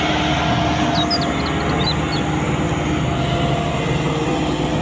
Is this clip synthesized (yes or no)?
no